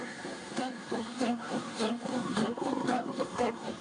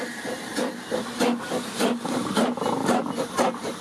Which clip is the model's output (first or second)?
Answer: first